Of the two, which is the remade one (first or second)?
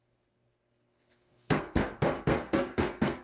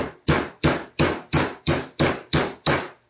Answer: first